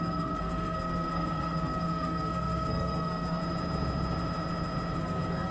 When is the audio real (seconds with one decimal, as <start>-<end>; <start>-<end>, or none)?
3.4-5.0